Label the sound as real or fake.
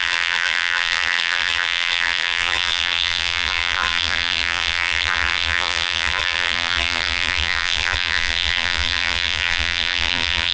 fake